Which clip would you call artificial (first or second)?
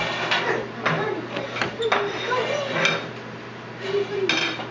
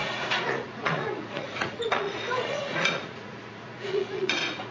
second